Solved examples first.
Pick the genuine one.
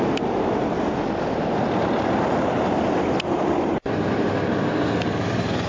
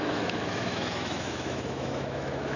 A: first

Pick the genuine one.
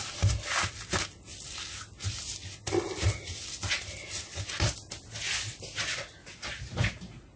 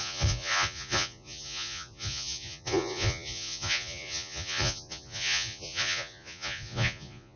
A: first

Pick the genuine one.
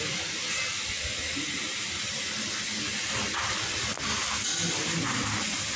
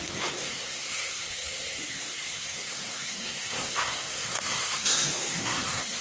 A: first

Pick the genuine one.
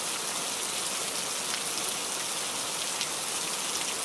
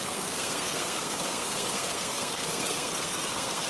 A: first